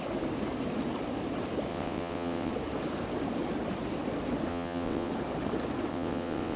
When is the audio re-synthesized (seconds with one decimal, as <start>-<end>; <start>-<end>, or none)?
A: 1.7-2.5; 4.5-5.1; 5.9-6.6